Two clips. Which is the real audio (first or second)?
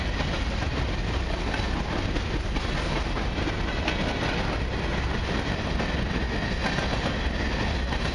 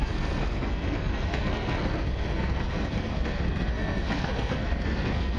first